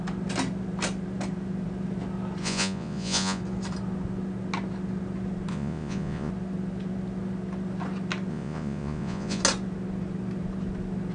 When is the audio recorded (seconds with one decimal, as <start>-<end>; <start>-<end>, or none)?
0.0-2.4; 3.4-5.5; 6.3-8.3; 9.4-11.1